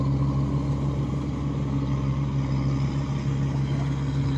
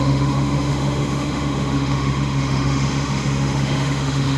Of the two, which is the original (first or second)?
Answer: first